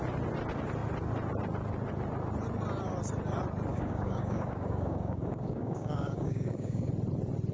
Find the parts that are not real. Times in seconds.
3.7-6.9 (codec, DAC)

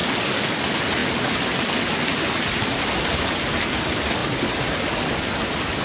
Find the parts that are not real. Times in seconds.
0.0-0.6 (codec, DAC)

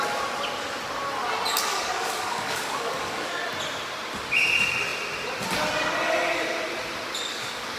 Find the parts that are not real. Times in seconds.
1.7-3.3 (codec, DAC); 7.3-7.8

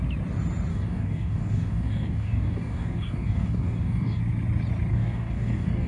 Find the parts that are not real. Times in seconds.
0.7-4.2 (codec, DAC); 4.9-5.9

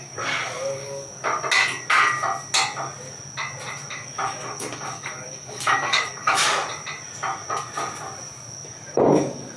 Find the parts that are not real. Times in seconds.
0.0-1.3 (codec, DAC); 3.9-6.6; 8.7-9.6

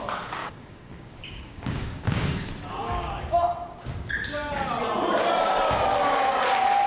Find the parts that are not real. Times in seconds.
0.4-3.2 (codec, DAC)

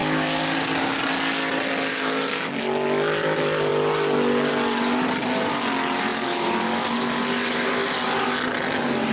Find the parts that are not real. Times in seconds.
0.0-1.0 (codec, DAC); 1.9-2.5